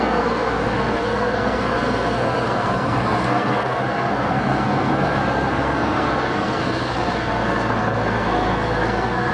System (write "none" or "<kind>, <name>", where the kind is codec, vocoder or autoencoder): codec, SNAC